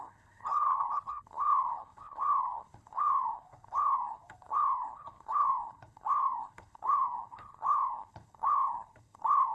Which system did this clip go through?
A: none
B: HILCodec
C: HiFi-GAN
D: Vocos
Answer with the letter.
B